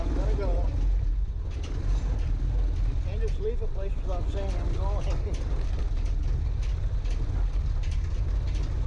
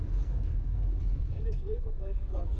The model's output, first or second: second